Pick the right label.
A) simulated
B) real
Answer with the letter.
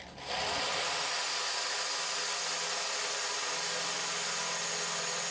B